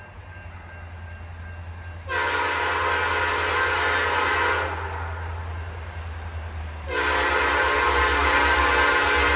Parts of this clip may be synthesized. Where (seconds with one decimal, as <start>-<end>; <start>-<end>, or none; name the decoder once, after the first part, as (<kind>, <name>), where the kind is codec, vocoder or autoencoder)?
8.2-9.4 (vocoder, BigVGAN v2)